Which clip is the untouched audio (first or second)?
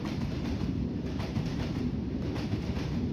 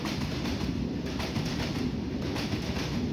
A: second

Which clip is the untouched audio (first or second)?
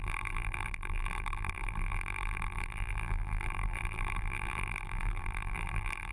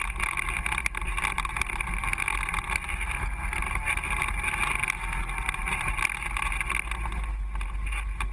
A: second